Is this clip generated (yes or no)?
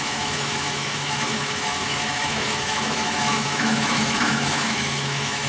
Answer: yes